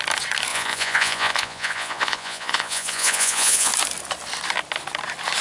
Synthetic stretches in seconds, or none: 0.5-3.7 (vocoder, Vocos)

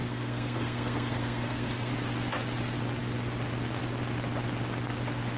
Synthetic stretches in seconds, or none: 0.0-1.9 (codec, SNAC)